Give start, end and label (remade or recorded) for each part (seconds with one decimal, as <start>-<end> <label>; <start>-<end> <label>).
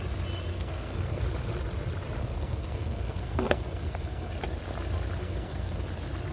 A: 0.0-0.5 recorded; 0.5-1.2 remade; 1.2-2.2 recorded; 2.2-4.3 remade; 4.3-5.2 recorded; 5.2-5.8 remade; 5.8-6.3 recorded